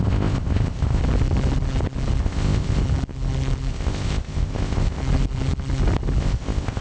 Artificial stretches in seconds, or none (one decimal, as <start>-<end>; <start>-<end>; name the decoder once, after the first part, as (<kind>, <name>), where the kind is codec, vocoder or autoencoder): 0.0-1.0 (codec, ZipCodec); 2.2-2.8; 3.7-5.0; 6.2-6.8